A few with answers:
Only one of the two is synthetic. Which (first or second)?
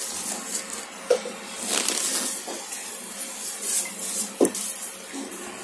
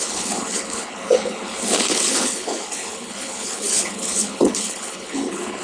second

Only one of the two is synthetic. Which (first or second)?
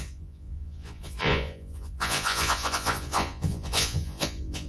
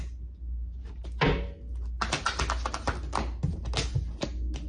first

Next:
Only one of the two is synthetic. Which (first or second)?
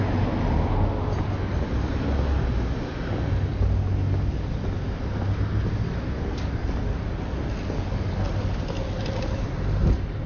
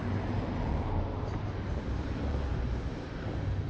second